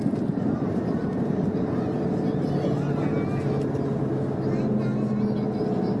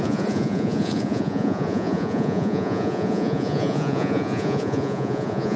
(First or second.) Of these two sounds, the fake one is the second